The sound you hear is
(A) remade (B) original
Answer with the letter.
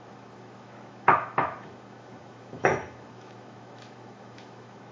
A